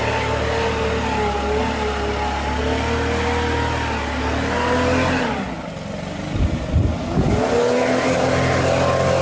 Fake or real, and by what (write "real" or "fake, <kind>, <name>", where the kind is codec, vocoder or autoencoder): real